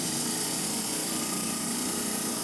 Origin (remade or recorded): remade